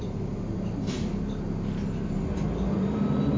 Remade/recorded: recorded